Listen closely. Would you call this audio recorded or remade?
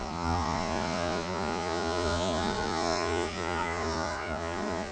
remade